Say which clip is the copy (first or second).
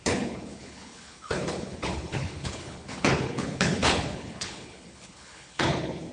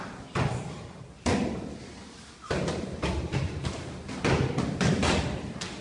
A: first